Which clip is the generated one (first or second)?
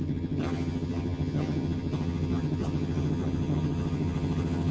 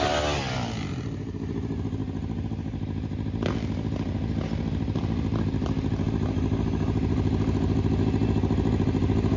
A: first